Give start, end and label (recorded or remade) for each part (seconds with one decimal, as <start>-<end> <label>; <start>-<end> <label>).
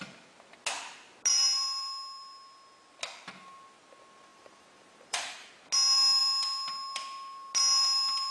0.0-4.3 recorded; 4.3-5.5 remade; 5.5-8.3 recorded